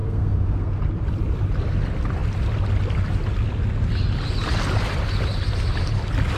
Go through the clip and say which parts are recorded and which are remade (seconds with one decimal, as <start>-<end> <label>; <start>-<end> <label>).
0.0-0.8 remade; 0.8-6.4 recorded